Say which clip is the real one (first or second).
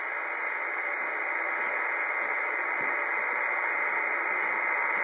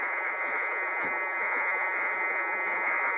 first